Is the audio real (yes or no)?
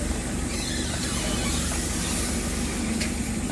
yes